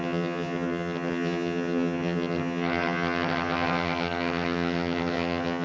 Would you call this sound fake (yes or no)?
yes